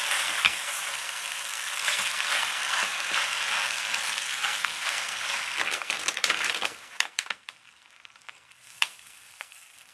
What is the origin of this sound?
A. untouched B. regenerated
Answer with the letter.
B